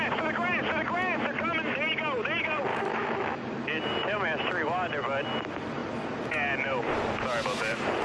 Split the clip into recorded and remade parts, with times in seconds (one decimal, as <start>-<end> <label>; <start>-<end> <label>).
0.0-2.7 recorded; 2.7-3.5 remade; 3.5-8.0 recorded

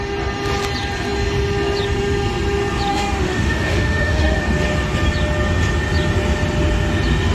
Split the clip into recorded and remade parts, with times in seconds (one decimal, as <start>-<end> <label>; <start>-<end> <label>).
0.0-2.9 recorded; 2.9-4.4 remade; 4.4-7.3 recorded

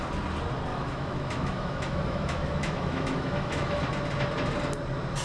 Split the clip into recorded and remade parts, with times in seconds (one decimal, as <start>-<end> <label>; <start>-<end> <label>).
0.0-0.7 recorded; 0.7-3.8 remade; 3.8-5.2 recorded

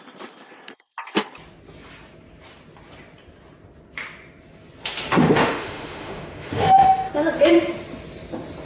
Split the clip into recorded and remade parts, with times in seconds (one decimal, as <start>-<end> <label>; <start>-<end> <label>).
0.0-5.2 recorded; 5.2-7.1 remade; 7.1-8.7 recorded

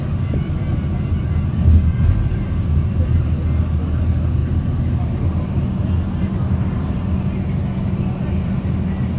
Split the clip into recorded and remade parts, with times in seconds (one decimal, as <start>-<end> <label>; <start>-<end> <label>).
0.0-9.2 recorded